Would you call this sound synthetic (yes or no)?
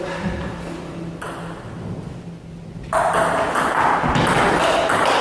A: no